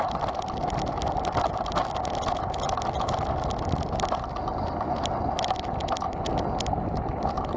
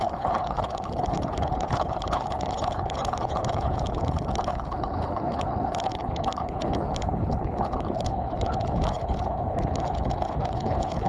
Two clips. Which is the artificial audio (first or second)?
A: second